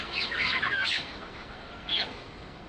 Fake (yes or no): yes